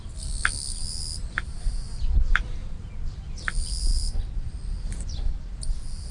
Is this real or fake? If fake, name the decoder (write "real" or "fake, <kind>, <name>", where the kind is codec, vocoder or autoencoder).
fake, vocoder, BigVGAN v2